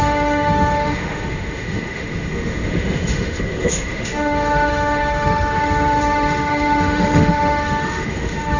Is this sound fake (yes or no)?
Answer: yes